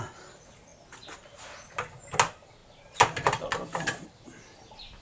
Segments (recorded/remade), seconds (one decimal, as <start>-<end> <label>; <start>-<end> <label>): 0.0-5.0 recorded